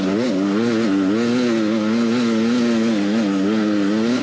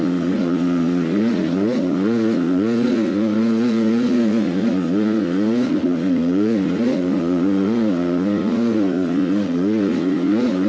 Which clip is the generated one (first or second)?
second